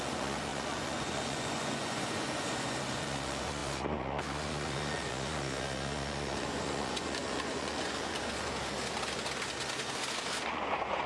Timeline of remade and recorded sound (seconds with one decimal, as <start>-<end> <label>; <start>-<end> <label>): 0.0-8.5 remade; 8.5-10.5 recorded; 10.5-11.1 remade